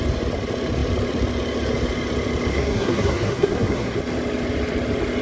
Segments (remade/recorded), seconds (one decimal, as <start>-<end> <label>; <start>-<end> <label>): 0.0-2.5 recorded; 2.5-4.0 remade; 4.0-5.2 recorded

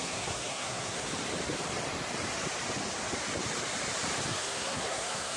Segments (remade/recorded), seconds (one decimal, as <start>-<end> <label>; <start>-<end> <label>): 0.0-1.1 remade; 1.1-4.3 recorded; 4.3-5.4 remade

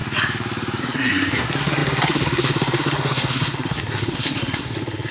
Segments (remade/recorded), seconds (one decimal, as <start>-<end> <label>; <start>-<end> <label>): 0.0-0.8 recorded; 0.8-5.1 remade

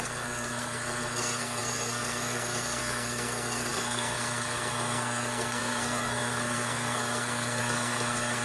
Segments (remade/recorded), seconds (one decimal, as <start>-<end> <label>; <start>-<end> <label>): 0.0-8.4 remade

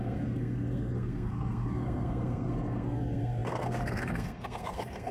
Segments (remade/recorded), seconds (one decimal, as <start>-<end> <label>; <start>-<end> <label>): 0.0-5.1 remade

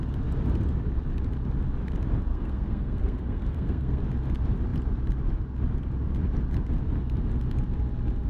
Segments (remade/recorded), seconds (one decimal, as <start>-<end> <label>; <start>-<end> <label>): 0.0-2.3 recorded; 2.3-4.0 remade; 4.0-8.3 recorded

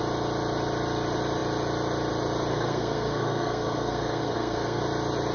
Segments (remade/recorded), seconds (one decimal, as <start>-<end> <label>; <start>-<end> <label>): 0.0-2.5 recorded; 2.5-4.8 remade; 4.8-5.3 recorded

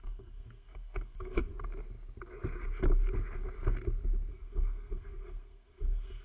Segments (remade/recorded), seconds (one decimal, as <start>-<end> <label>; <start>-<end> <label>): 0.0-1.5 remade; 1.5-4.3 recorded; 4.3-6.2 remade